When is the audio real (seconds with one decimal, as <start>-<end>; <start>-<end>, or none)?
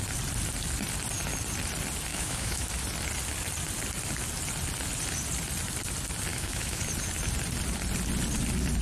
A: 0.0-2.1; 2.7-6.3; 6.8-8.8